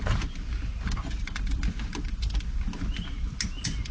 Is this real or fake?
real